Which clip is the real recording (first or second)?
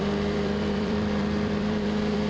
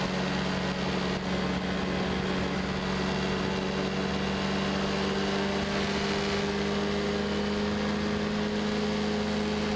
second